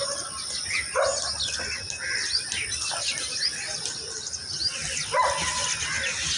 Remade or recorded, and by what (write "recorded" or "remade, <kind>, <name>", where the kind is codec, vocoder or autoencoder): recorded